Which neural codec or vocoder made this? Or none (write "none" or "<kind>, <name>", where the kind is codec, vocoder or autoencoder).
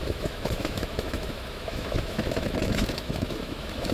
autoencoder, DAC-VAE